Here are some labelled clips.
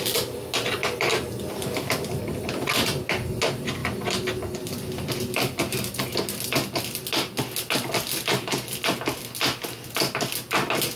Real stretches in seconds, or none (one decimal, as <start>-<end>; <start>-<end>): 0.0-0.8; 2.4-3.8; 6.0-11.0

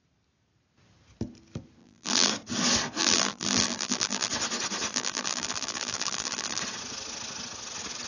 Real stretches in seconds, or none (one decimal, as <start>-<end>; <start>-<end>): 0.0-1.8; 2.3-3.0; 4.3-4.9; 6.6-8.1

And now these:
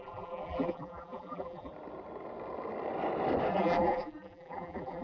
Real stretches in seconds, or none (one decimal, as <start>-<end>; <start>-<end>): 1.7-3.5

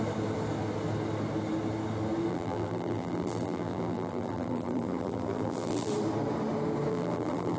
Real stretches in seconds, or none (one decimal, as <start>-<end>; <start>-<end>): 0.0-2.3; 5.9-6.9

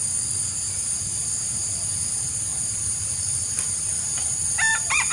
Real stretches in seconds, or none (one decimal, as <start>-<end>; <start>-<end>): 0.0-2.5

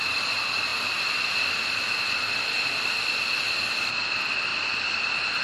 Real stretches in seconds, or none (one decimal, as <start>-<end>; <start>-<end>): 0.0-4.5

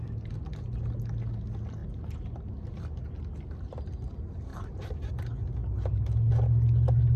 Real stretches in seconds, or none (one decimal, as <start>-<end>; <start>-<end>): 0.0-4.5; 5.1-7.2